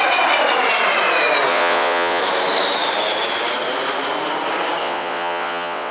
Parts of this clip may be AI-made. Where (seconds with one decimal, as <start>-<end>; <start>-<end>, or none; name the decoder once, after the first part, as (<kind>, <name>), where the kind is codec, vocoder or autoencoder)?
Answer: 1.5-2.2 (vocoder, WaveNeXt); 4.8-5.9